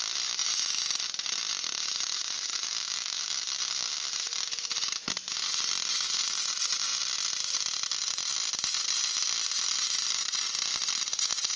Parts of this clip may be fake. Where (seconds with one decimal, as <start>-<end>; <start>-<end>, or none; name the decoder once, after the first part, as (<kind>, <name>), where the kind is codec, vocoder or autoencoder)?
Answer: none